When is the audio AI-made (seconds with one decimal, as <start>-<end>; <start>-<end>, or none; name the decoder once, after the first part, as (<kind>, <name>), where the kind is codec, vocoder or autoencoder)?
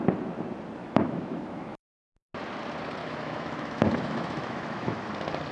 0.8-2.0 (autoencoder, DAC-VAE); 3.0-5.1